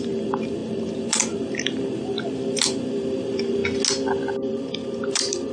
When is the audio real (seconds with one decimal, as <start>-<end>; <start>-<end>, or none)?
3.6-4.5